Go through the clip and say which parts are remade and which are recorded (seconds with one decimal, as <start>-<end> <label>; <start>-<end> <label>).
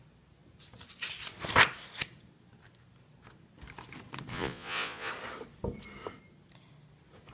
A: 0.0-4.3 recorded; 4.3-5.1 remade; 5.1-7.3 recorded